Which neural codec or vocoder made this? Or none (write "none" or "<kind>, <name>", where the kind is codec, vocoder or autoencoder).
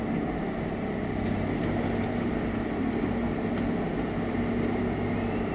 none